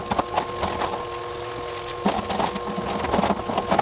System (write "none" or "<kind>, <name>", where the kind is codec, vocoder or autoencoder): none